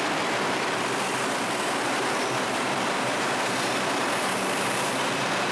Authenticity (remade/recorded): remade